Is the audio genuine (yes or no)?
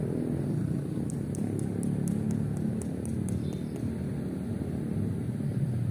yes